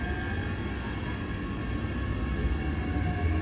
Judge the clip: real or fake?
real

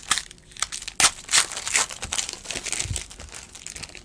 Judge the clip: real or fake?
real